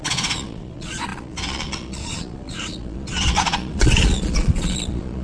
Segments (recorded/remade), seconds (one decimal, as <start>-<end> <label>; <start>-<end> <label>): 0.0-5.2 remade